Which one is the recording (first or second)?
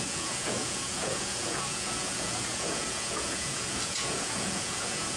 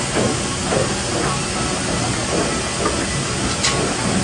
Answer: second